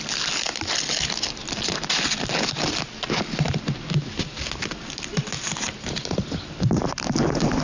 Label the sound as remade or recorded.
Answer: recorded